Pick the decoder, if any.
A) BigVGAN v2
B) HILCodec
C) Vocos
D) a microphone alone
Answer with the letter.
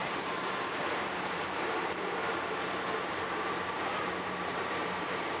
A